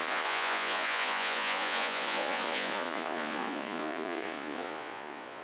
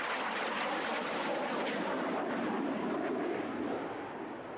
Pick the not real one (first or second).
first